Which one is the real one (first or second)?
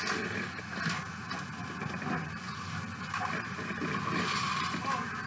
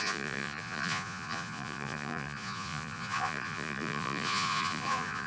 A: first